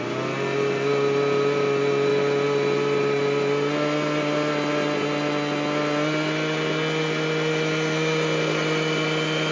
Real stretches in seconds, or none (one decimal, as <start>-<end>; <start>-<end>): 0.0-9.5